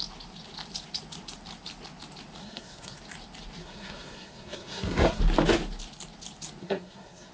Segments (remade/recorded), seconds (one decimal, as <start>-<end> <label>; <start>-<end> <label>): 0.0-2.4 recorded; 2.4-3.0 remade; 3.0-3.6 recorded; 3.6-5.2 remade; 5.2-6.6 recorded; 6.6-7.3 remade

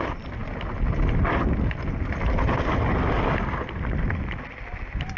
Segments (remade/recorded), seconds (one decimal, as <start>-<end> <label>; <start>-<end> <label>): 0.0-5.2 recorded

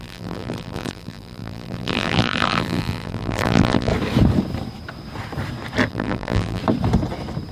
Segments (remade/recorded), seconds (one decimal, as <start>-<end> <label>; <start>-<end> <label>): 0.0-3.9 remade; 3.9-5.9 recorded; 5.9-6.6 remade; 6.6-7.5 recorded